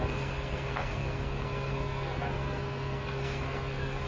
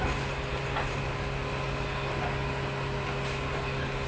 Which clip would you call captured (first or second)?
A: second